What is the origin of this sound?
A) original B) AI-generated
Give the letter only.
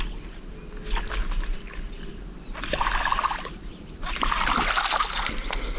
A